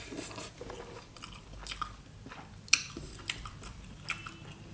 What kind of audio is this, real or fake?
real